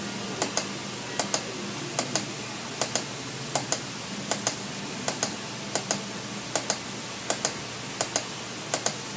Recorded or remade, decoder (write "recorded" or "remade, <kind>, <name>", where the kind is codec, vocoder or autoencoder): recorded